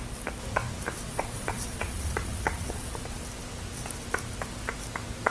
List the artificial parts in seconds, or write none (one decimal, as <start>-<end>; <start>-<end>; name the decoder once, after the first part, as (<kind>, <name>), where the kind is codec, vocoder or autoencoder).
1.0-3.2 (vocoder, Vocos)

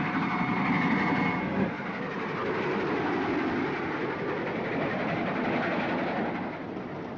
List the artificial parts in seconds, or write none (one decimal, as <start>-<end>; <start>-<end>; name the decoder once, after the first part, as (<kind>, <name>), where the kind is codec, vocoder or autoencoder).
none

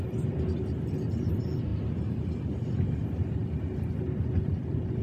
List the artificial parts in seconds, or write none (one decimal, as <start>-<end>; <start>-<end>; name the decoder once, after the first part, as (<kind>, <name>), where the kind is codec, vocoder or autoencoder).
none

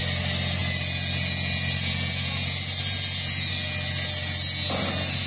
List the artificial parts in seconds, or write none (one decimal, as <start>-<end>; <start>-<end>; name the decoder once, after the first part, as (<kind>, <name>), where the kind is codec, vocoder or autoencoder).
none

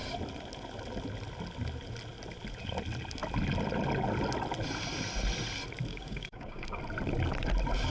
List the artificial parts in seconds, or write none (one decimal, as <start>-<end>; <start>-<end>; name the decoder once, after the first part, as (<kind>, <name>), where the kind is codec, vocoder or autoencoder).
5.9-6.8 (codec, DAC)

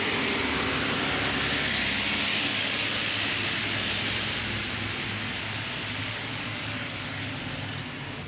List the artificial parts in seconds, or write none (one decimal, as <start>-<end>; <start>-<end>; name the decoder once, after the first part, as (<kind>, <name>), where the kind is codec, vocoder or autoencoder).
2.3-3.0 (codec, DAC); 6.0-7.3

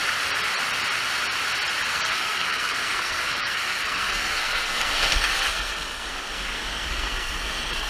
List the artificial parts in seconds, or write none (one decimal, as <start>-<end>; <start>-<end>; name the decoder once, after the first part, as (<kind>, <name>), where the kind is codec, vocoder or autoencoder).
1.9-7.9 (codec, SNAC)

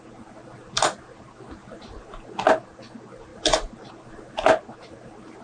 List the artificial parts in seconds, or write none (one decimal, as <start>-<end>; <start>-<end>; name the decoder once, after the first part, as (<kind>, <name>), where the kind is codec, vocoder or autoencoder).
none